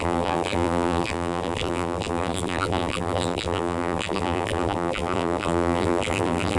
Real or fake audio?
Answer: fake